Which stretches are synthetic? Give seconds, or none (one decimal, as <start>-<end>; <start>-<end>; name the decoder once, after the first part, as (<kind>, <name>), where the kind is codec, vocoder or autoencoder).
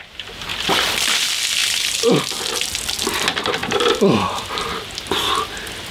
1.6-2.2 (vocoder, BigVGAN v2); 3.6-4.7